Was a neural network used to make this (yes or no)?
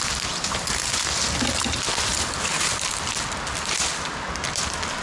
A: no